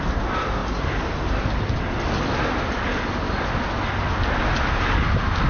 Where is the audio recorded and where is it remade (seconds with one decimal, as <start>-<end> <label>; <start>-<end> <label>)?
0.0-5.5 recorded